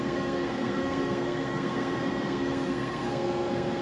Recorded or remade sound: remade